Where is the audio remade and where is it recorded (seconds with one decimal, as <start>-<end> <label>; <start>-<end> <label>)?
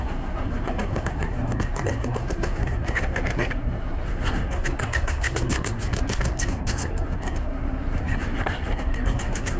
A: 0.0-9.6 remade